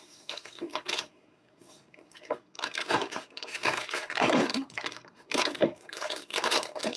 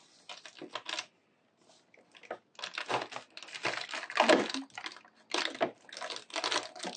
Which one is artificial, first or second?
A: first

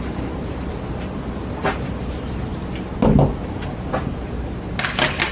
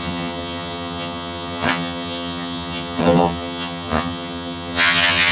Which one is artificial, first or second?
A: second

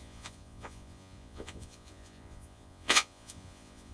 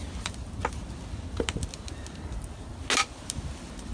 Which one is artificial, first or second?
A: first